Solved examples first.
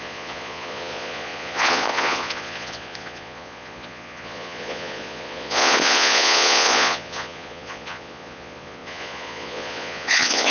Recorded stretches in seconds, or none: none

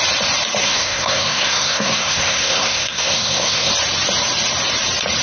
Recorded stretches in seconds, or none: 0.0-0.6; 3.7-5.2